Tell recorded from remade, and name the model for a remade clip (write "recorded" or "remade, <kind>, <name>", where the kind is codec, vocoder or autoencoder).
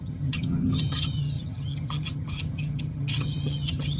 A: remade, vocoder, HiFi-GAN